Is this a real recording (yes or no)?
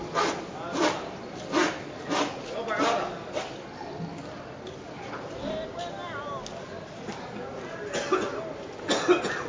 yes